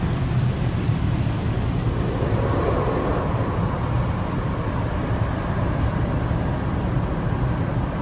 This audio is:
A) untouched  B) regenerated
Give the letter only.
A